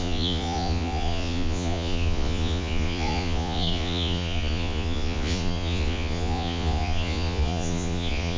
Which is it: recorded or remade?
remade